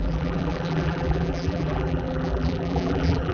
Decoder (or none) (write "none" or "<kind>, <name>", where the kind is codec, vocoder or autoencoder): vocoder, BigVGAN v2